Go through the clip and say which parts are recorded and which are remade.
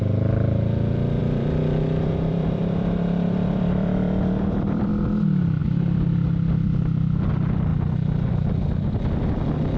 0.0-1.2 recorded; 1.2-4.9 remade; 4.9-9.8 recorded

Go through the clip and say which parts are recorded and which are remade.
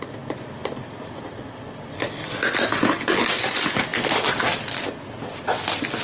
0.0-0.6 recorded; 0.6-1.9 remade; 1.9-6.0 recorded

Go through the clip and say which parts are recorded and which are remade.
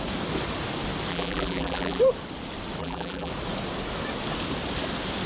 0.0-1.1 recorded; 1.1-2.0 remade; 2.0-2.8 recorded; 2.8-3.3 remade; 3.3-5.3 recorded